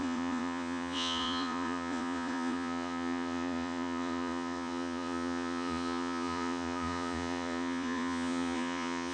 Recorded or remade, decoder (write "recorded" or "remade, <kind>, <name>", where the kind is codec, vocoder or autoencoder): remade, vocoder, Vocos